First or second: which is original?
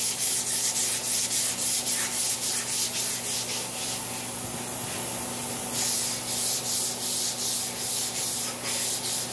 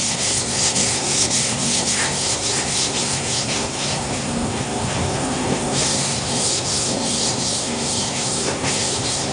first